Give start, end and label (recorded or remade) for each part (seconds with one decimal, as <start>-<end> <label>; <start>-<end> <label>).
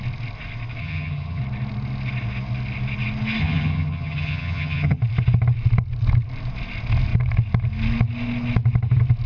0.0-0.8 recorded; 0.8-1.4 remade; 1.4-3.4 recorded; 3.4-5.0 remade; 5.0-9.3 recorded